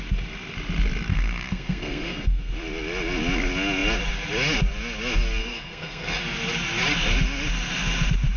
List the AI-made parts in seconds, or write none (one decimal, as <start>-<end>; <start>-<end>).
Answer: 1.1-2.5; 5.4-6.2